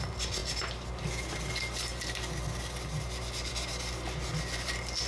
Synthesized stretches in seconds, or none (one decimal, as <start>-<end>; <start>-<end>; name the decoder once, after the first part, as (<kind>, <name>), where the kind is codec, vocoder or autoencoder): none